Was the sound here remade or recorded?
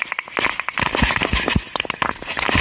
recorded